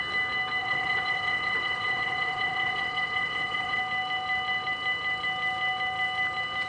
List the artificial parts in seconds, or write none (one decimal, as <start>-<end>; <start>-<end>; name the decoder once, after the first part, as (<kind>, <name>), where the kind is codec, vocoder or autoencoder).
0.6-3.8 (vocoder, WaveNeXt)